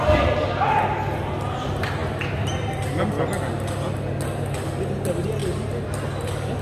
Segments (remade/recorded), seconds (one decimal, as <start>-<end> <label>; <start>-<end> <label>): 0.0-6.6 recorded